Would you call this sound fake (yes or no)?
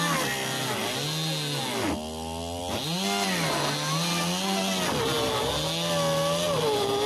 no